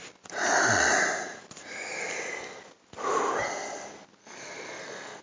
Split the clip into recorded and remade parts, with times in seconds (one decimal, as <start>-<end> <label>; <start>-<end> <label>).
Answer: 0.0-4.2 recorded; 4.2-5.2 remade